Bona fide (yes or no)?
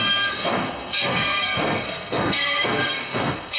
no